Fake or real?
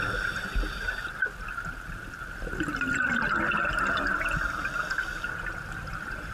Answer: real